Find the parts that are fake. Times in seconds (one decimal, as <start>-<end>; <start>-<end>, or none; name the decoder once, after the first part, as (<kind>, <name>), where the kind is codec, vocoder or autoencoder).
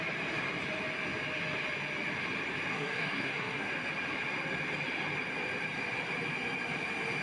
2.7-3.7 (codec, SNAC)